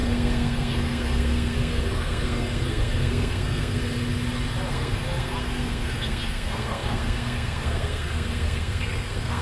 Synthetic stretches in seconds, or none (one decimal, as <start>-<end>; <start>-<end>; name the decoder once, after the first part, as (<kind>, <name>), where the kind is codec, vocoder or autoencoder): 0.0-3.8 (codec, SNAC); 4.7-9.4